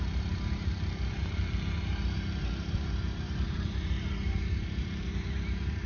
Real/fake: fake